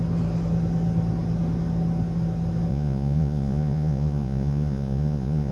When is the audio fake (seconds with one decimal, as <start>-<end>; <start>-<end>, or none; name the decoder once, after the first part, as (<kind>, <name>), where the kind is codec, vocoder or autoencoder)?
2.7-5.5 (vocoder, Vocos)

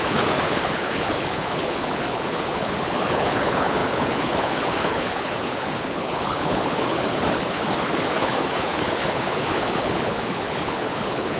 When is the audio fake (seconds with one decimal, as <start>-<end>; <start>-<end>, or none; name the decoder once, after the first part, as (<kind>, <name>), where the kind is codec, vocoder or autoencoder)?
0.0-11.4 (codec, HILCodec)

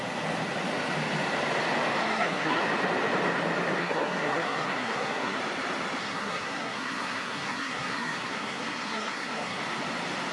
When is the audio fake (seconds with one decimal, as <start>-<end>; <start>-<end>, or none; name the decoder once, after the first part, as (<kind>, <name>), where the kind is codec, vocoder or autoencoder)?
2.0-2.6 (codec, SNAC); 3.8-5.4; 6.0-9.6

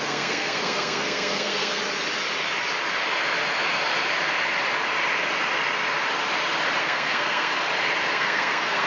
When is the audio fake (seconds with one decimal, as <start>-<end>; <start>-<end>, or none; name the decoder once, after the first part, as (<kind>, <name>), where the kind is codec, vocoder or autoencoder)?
0.0-1.8 (codec, SNAC); 6.8-7.5; 8.1-8.9